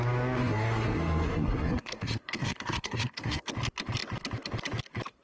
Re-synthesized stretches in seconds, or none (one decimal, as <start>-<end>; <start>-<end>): 0.4-3.5